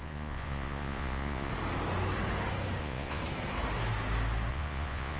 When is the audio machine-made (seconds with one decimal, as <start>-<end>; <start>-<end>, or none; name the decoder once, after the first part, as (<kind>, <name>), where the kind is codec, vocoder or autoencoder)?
0.0-1.5 (vocoder, Vocos); 2.8-3.2; 4.5-5.2